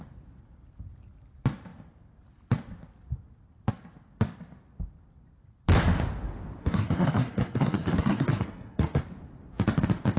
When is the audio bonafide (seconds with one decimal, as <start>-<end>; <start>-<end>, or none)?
0.0-6.6; 9.0-10.2